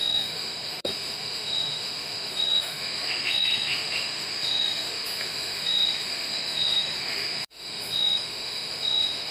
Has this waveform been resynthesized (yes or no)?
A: yes